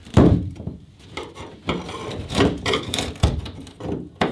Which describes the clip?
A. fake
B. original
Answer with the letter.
A